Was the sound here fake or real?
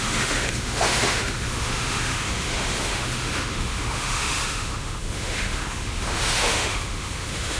fake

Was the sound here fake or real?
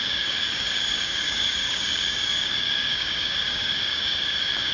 fake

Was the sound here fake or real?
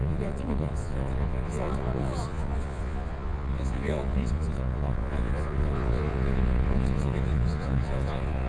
fake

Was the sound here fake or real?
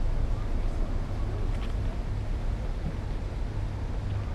real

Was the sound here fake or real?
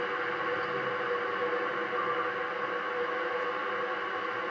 real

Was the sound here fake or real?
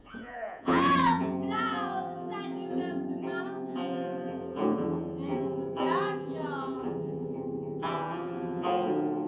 fake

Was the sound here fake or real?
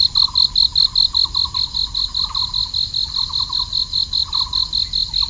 real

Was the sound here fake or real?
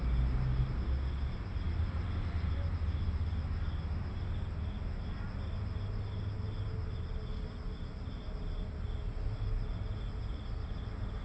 real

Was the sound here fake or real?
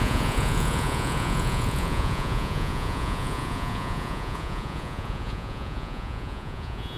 fake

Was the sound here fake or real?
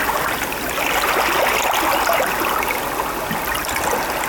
real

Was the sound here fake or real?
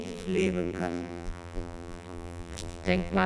fake